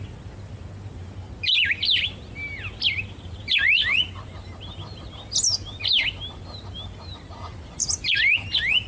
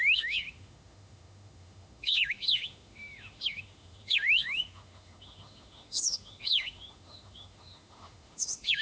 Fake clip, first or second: second